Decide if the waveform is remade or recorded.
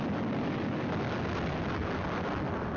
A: recorded